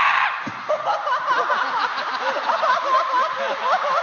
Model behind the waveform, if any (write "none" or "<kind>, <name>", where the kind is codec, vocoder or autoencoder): none